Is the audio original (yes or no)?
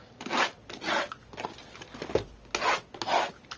yes